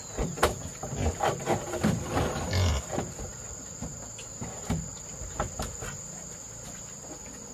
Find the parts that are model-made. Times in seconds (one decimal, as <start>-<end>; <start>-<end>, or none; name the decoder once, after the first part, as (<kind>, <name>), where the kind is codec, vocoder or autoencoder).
none